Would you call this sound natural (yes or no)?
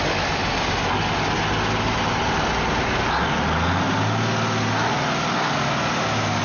yes